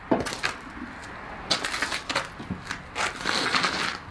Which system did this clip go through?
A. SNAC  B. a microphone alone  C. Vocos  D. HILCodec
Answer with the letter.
B